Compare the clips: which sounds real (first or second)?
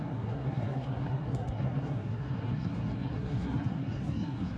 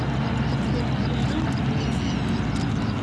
second